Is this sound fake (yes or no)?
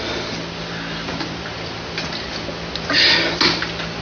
no